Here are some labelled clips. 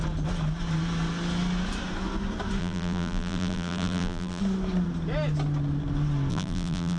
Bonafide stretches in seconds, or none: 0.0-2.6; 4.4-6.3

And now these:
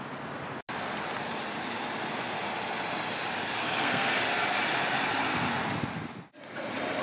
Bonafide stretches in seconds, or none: 0.0-3.6; 4.1-7.0

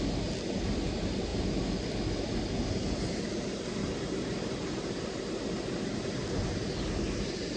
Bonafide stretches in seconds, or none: 0.0-7.6

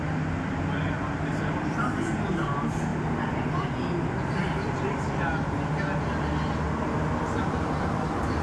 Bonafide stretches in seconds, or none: 0.0-8.4

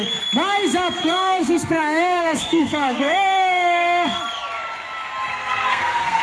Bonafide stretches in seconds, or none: 0.0-1.0; 4.2-5.3

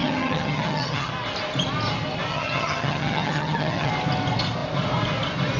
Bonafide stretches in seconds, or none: 1.1-2.3; 3.9-5.6